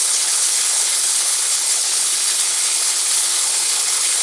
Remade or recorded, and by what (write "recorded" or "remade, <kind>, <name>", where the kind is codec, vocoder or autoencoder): remade, codec, HILCodec